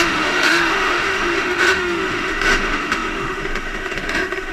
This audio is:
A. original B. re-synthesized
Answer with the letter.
B